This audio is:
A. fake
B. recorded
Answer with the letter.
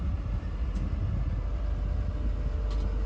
B